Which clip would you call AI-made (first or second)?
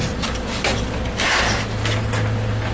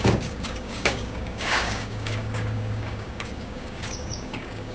second